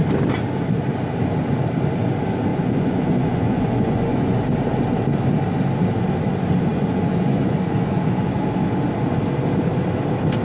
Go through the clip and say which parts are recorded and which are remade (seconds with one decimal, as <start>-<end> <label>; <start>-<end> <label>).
0.0-2.5 recorded; 2.5-4.4 remade; 4.4-6.7 recorded; 6.7-8.4 remade; 8.4-10.4 recorded